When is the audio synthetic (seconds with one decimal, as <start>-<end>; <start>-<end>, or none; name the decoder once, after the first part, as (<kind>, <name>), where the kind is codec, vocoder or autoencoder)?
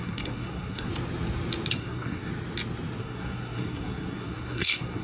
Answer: 0.0-0.9 (codec, SNAC); 1.7-2.3; 3.0-5.0